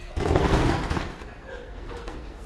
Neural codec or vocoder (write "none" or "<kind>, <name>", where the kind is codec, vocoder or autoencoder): codec, SNAC